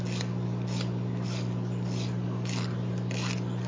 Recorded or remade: recorded